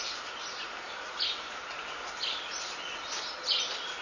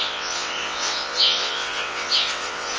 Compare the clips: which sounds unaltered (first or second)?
first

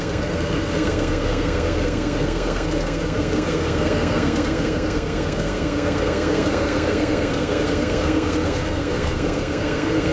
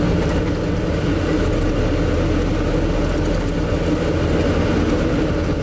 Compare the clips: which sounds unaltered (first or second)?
second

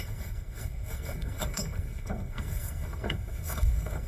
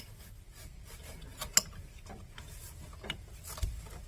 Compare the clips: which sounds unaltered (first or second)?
second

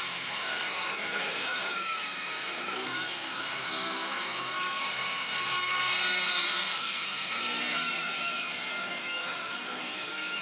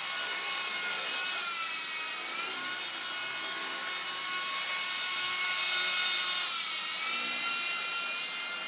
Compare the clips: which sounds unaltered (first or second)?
second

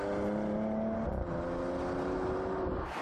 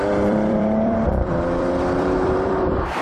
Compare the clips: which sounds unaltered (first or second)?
first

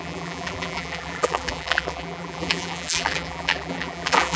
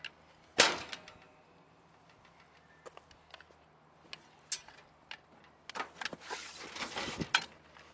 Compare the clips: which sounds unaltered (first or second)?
second